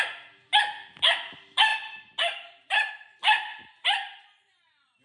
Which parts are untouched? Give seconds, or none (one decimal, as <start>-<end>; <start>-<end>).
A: 0.0-1.7; 2.9-3.5; 4.6-5.0